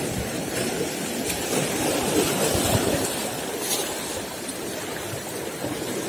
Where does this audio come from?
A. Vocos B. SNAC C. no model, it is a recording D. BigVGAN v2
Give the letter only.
D